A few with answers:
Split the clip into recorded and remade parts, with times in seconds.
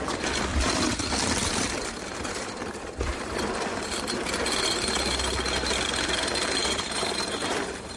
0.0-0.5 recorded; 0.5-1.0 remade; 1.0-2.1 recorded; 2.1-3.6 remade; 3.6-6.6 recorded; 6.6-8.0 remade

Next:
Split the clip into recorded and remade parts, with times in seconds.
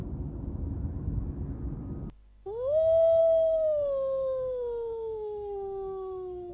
0.0-3.2 recorded; 3.2-6.5 remade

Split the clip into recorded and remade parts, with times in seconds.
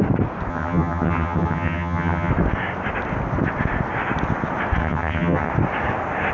0.0-0.5 recorded; 0.5-2.3 remade; 2.3-4.8 recorded; 4.8-5.5 remade; 5.5-6.3 recorded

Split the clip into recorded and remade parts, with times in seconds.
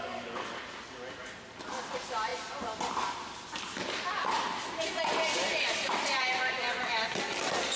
0.0-7.8 recorded